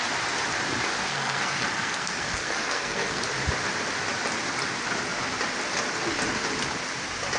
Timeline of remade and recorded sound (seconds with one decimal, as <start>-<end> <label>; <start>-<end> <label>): 0.0-1.1 recorded; 1.1-3.2 remade; 3.2-7.4 recorded